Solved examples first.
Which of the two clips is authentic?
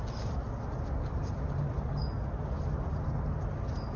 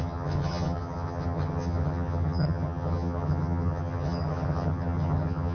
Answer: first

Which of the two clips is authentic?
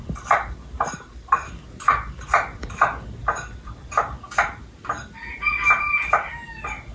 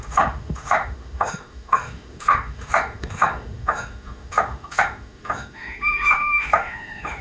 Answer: first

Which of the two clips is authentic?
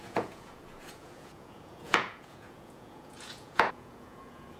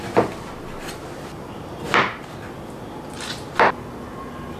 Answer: second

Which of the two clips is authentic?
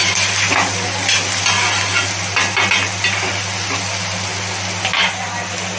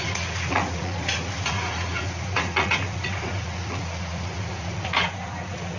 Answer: first